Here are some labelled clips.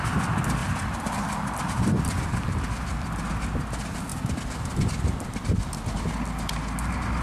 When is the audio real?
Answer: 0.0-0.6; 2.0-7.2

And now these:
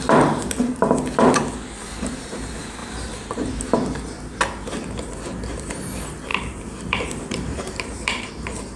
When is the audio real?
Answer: 0.0-2.8; 3.5-6.3

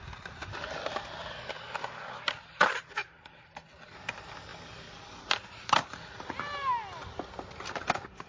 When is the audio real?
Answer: 0.0-8.3

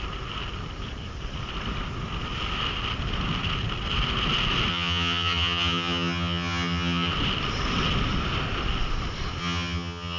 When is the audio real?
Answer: 0.0-4.7; 7.1-9.4

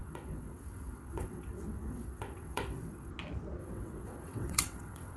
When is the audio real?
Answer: 3.1-3.6